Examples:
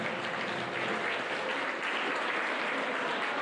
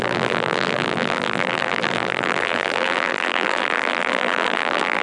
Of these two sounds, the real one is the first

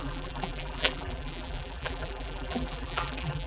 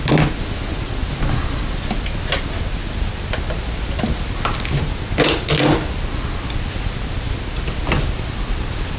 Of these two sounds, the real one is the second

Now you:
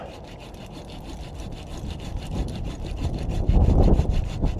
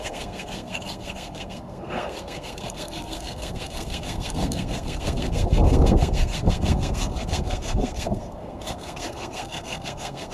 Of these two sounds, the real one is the first